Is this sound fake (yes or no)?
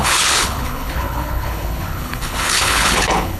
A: yes